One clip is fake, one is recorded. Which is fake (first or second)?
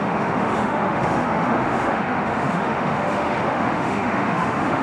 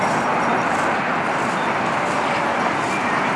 first